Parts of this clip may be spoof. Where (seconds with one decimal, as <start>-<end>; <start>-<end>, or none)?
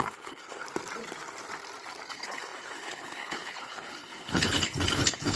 0.0-0.6; 2.1-5.4